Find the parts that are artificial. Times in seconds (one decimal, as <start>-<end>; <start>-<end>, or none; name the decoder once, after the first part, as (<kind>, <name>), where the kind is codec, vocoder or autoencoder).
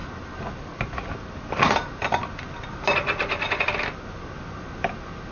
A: none